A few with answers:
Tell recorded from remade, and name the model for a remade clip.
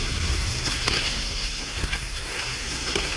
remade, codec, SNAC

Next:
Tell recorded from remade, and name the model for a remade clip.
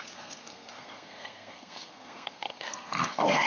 remade, codec, SNAC